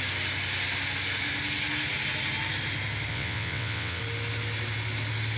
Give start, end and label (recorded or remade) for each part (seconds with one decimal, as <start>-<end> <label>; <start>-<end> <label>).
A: 0.0-3.1 recorded; 3.1-4.0 remade; 4.0-5.4 recorded